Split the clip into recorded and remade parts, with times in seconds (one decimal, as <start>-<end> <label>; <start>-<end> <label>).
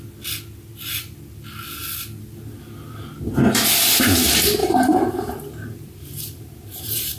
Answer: 0.0-4.6 recorded; 4.6-7.2 remade